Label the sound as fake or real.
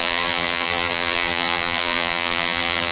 fake